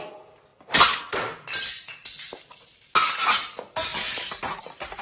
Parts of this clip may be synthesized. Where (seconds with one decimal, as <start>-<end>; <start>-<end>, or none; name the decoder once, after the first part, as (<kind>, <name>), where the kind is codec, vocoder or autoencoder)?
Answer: none